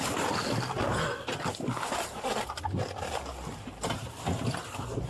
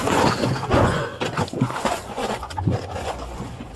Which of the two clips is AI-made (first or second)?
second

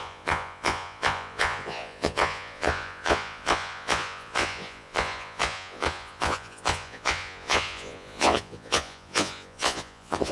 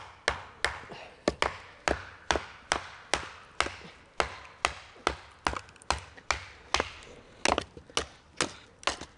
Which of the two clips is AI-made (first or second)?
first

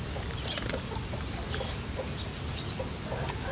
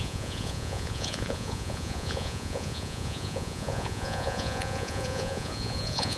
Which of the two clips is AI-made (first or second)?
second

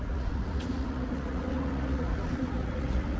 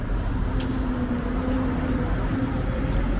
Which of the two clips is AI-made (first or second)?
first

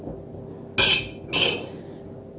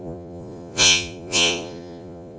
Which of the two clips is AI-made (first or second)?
second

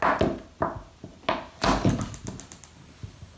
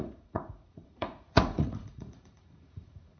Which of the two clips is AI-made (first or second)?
second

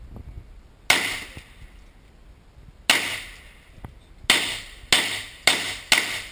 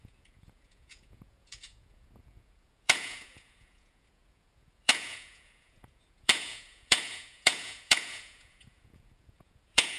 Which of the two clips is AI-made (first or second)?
second